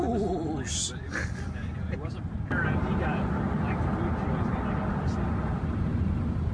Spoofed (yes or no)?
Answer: no